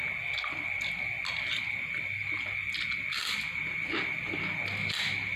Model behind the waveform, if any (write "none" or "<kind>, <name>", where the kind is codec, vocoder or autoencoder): none